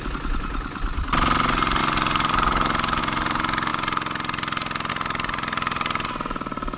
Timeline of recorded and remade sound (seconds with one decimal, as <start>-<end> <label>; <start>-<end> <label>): 0.0-1.0 recorded; 1.0-1.8 remade; 1.8-3.0 recorded; 3.0-3.7 remade; 3.7-4.9 recorded; 4.9-6.8 remade